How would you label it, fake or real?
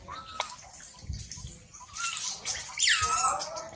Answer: real